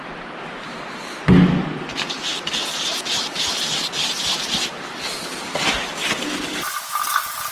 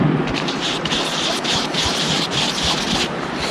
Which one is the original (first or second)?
first